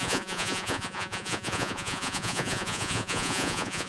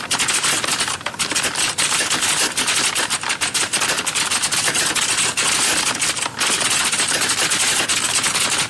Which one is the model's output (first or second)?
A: first